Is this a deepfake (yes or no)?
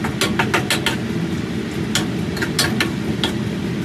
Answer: no